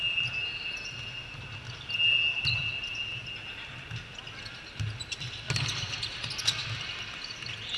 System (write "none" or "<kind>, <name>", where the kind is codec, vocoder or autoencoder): none